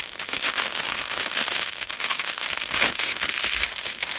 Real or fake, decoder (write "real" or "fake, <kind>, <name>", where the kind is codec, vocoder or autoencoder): fake, autoencoder, DAC-VAE